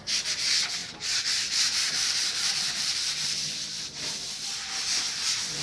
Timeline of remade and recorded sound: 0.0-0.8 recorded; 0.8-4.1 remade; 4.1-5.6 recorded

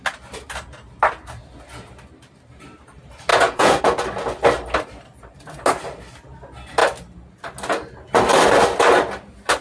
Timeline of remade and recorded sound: 0.0-3.3 recorded; 3.3-3.8 remade; 3.8-9.6 recorded

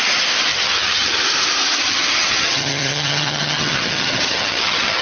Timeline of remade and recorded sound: 0.0-0.5 recorded; 0.5-1.2 remade; 1.2-1.8 recorded; 1.8-5.0 remade

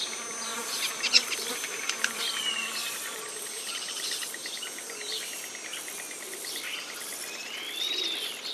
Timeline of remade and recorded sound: 0.0-0.5 recorded; 0.5-2.2 remade; 2.2-2.8 recorded; 2.8-4.6 remade; 4.6-8.5 recorded

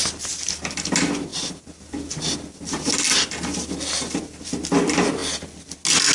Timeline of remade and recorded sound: 0.0-6.1 recorded

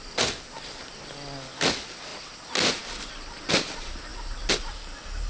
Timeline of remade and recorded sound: 0.0-4.1 recorded; 4.1-4.8 remade; 4.8-5.3 recorded

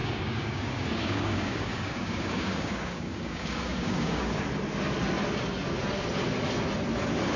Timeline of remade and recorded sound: 0.0-4.4 remade; 4.4-7.4 recorded

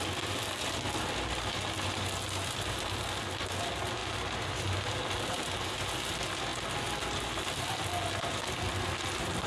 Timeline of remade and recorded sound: 0.0-9.5 recorded